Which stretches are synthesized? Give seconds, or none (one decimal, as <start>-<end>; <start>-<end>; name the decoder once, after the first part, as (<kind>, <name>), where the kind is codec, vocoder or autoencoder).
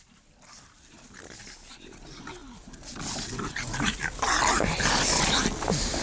none